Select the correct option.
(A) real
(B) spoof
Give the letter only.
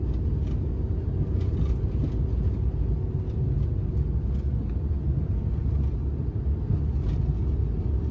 A